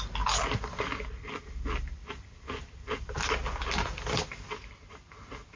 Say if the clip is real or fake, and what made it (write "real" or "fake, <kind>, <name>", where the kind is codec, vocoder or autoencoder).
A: real